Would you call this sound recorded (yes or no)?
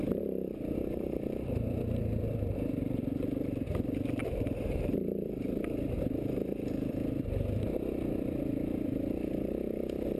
no